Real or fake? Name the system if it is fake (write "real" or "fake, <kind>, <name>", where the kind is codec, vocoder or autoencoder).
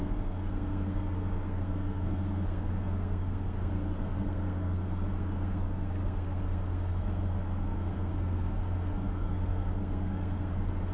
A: fake, codec, SNAC